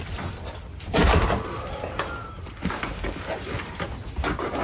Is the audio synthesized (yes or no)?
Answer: no